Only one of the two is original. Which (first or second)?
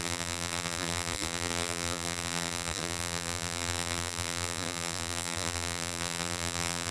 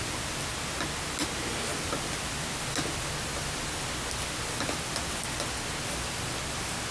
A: second